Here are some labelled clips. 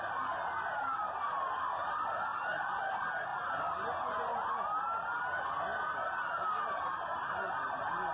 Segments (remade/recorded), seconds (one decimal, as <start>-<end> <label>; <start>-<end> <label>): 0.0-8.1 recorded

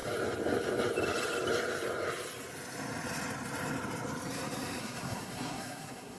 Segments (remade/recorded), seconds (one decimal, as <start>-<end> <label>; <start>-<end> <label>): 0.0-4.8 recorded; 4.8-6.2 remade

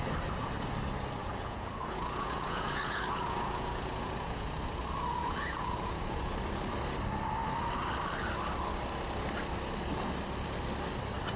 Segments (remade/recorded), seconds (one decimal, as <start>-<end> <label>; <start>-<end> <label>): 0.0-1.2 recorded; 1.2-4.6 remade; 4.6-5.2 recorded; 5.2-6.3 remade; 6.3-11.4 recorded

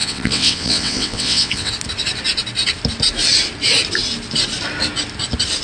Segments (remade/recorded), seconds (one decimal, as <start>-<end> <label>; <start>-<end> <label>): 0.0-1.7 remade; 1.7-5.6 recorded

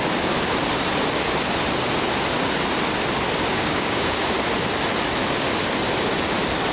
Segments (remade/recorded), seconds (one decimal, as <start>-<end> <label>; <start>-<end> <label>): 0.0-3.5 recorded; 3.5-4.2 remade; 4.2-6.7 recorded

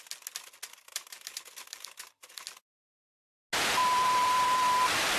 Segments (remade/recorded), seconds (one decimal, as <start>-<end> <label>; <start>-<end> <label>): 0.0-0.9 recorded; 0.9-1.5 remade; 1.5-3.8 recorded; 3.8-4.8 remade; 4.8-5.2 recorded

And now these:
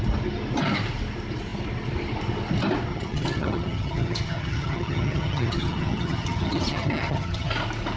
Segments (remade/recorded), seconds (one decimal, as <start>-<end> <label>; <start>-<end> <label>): 0.0-2.9 recorded; 2.9-7.5 remade; 7.5-8.0 recorded

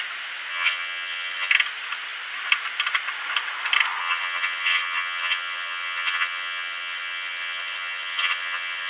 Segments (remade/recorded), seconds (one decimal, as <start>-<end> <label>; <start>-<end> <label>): 0.0-0.5 recorded; 0.5-1.5 remade; 1.5-4.0 recorded; 4.0-8.9 remade